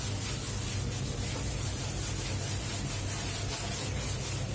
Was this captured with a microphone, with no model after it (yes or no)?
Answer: yes